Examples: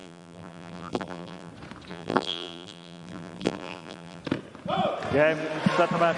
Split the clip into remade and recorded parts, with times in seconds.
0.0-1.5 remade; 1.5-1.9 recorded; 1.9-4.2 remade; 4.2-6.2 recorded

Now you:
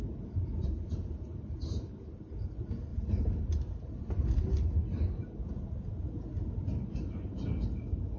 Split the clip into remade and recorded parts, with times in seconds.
0.0-8.2 recorded